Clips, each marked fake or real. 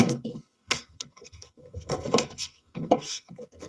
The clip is fake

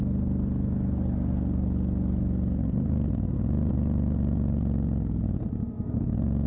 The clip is real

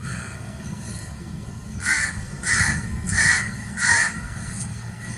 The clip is fake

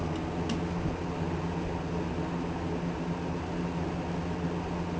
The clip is real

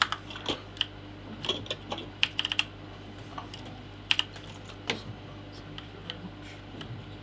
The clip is real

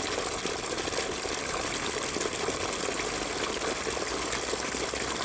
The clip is real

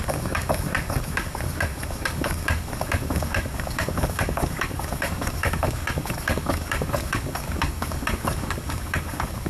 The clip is fake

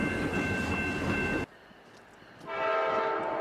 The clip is real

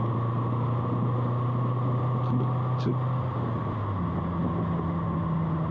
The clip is real